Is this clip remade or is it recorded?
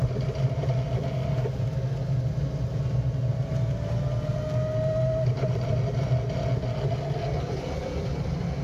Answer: recorded